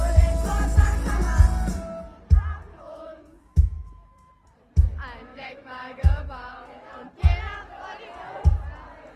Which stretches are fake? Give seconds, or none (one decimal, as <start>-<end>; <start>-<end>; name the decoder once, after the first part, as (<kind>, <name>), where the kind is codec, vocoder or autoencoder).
2.7-4.3 (autoencoder, DAC-VAE); 5.3-6.9